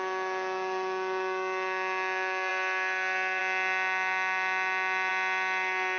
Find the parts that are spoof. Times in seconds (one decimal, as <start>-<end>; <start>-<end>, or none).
0.0-2.5; 3.4-5.1